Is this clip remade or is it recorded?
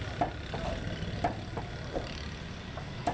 recorded